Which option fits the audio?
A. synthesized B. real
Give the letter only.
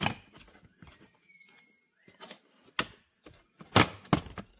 B